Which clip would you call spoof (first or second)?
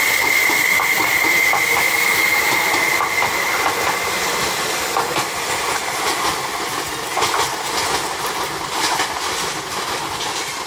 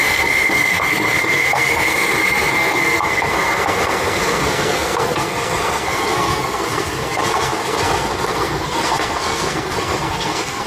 second